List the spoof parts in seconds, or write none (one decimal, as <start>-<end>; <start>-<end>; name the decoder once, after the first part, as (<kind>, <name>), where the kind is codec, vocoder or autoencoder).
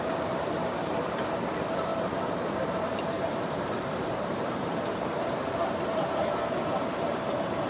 0.0-7.7 (vocoder, BigVGAN v2)